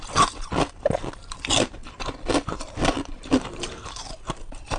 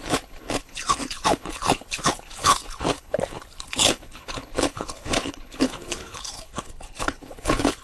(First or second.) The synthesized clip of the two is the second